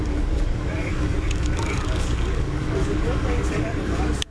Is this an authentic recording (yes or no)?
no